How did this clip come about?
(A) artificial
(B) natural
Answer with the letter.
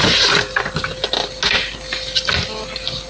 B